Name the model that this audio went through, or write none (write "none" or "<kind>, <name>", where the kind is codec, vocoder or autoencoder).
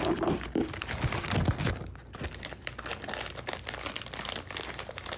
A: none